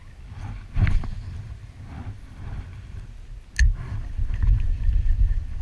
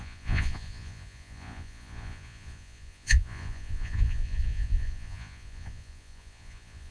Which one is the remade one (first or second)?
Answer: second